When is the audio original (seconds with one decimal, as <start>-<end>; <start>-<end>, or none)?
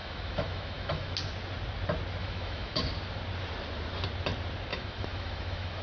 1.1-2.2; 2.8-4.7